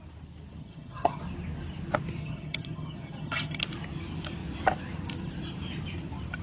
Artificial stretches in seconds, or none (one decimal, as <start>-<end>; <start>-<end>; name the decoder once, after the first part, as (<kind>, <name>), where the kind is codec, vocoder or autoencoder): 0.6-1.2 (vocoder, HiFi-GAN); 2.2-3.6